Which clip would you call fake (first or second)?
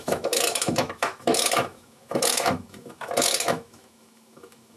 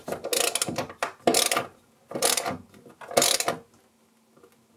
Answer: first